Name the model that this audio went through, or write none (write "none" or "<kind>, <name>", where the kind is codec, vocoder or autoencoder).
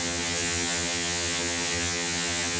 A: vocoder, HiFi-GAN